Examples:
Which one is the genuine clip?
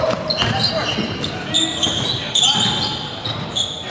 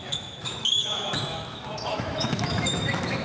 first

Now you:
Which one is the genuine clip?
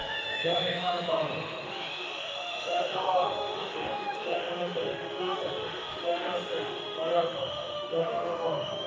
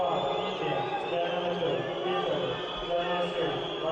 second